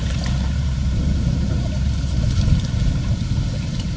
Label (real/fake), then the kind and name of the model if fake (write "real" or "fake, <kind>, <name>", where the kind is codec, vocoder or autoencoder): fake, vocoder, BigVGAN v2